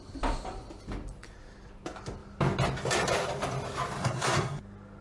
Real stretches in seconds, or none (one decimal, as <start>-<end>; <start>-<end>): 0.0-4.0; 4.6-5.0